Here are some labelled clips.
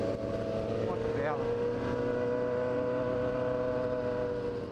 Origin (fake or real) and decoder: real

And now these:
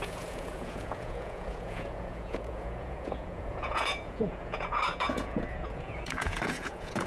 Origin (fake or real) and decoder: fake, vocoder, Vocos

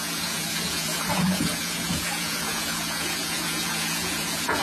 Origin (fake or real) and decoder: fake, vocoder, Vocos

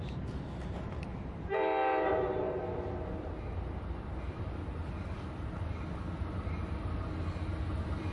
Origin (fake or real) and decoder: real